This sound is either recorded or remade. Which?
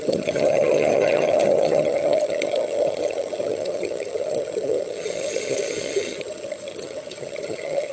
remade